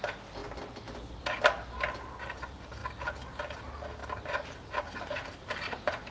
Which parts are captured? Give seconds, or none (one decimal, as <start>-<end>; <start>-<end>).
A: 0.0-6.1